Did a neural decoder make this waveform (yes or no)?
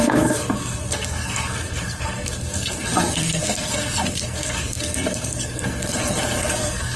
yes